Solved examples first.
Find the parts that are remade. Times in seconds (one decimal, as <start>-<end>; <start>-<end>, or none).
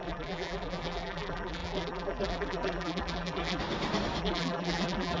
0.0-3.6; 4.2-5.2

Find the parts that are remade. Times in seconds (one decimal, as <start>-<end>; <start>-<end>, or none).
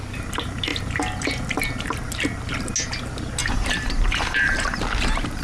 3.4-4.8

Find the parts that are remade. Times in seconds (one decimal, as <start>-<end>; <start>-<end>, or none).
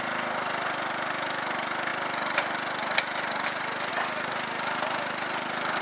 none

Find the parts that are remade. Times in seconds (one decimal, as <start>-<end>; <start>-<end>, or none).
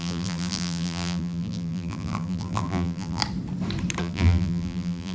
0.0-3.2; 4.0-5.1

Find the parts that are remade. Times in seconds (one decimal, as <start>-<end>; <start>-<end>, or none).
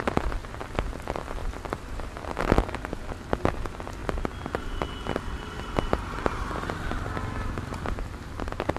0.4-1.0; 1.4-2.3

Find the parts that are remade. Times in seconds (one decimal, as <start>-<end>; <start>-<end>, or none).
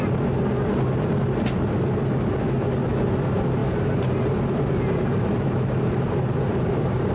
3.6-7.1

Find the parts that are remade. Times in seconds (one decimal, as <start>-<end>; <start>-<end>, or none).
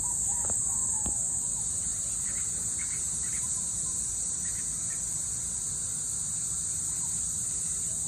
0.0-1.9; 2.5-4.5; 7.2-8.1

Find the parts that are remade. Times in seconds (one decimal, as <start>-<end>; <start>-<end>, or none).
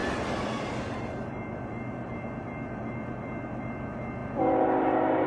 0.0-3.2